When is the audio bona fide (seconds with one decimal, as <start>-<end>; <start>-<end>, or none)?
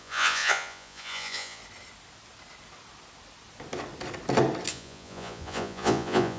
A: 1.6-4.7